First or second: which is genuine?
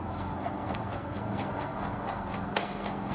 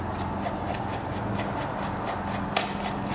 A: second